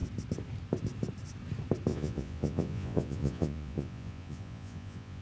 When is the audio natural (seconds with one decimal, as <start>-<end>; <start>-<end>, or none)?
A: 0.0-1.9